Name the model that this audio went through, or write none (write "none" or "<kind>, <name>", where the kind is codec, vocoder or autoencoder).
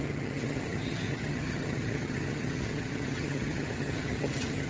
vocoder, HiFi-GAN